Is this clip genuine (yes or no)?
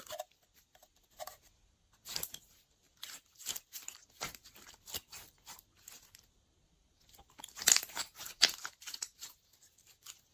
no